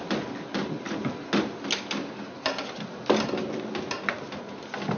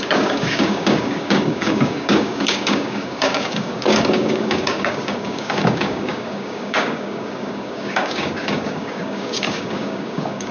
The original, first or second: first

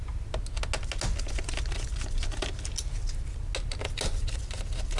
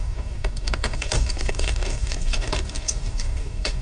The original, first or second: first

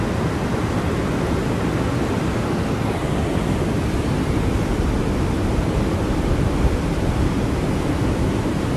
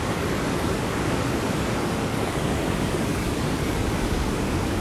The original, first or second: first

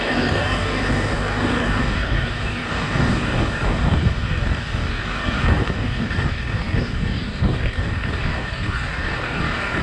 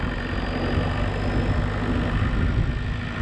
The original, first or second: second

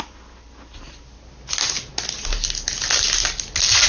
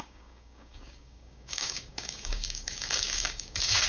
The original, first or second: first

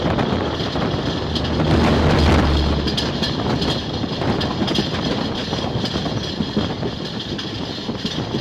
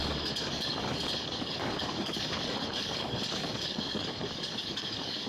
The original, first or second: first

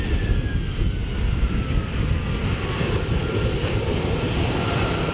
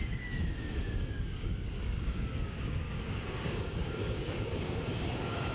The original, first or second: first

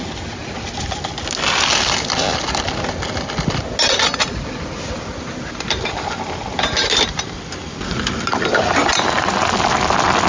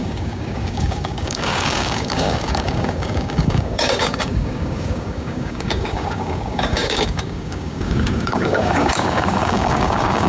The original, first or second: first